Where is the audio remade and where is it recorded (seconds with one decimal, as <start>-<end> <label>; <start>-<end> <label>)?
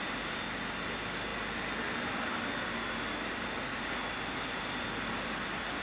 0.0-5.8 recorded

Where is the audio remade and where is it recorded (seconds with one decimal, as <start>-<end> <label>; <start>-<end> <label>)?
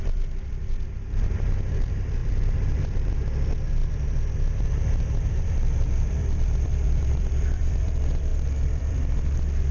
0.0-9.7 remade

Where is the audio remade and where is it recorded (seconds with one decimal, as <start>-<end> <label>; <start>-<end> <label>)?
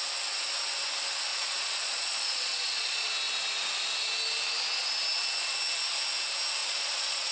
0.0-1.3 recorded; 1.3-3.1 remade; 3.1-6.6 recorded; 6.6-7.3 remade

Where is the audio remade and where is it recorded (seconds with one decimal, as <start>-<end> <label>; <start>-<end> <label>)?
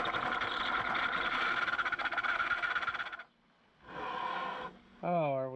0.0-4.3 recorded; 4.3-5.0 remade; 5.0-5.6 recorded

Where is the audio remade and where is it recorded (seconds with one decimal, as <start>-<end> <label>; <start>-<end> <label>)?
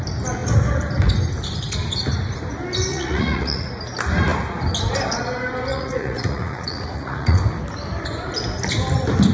0.0-2.9 recorded; 2.9-3.7 remade; 3.7-5.7 recorded; 5.7-7.4 remade; 7.4-9.3 recorded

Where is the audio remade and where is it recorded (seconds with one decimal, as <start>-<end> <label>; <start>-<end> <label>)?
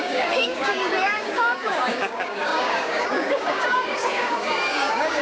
0.0-5.2 remade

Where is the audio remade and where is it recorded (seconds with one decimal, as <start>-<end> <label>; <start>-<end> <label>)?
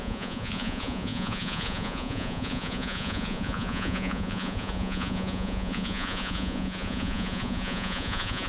0.0-8.5 remade